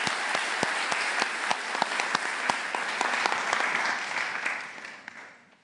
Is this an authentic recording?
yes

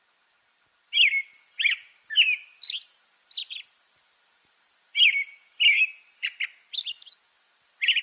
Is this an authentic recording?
yes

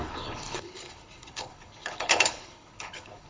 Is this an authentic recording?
no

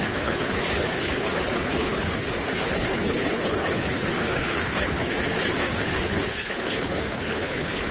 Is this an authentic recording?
no